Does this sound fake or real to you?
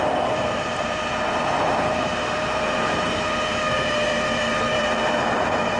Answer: fake